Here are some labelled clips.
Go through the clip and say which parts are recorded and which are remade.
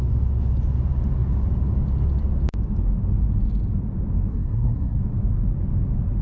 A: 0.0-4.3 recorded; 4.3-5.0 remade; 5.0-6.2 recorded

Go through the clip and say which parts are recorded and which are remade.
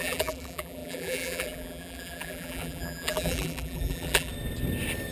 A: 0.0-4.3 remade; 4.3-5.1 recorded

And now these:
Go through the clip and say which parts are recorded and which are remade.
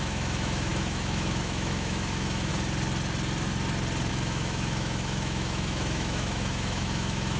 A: 0.0-2.5 remade; 2.5-4.1 recorded; 4.1-7.4 remade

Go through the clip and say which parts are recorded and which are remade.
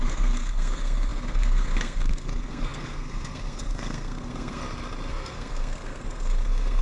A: 0.0-4.6 remade; 4.6-5.1 recorded; 5.1-6.8 remade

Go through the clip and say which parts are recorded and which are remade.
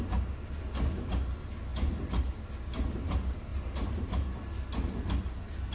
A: 0.0-1.7 recorded; 1.7-2.3 remade; 2.3-3.5 recorded; 3.5-4.4 remade; 4.4-5.7 recorded